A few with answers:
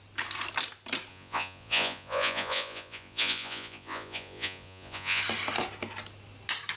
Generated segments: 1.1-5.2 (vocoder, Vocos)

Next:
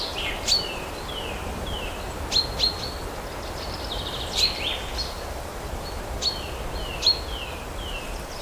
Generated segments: none

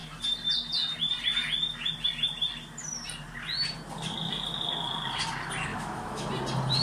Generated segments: 5.7-6.3 (autoencoder, DAC-VAE)

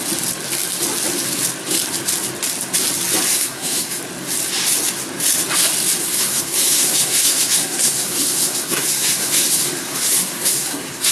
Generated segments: 3.3-4.0 (codec, SNAC); 6.0-11.1

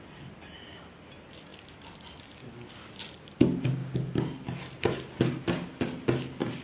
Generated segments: none